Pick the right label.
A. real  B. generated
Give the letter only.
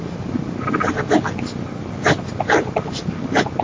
A